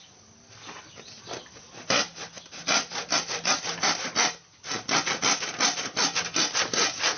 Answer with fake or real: real